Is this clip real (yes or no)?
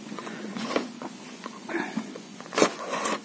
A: no